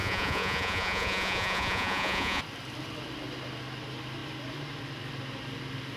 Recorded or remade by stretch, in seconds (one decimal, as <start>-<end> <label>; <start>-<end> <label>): 0.0-2.4 remade; 2.4-6.0 recorded